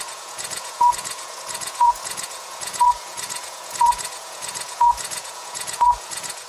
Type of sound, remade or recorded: remade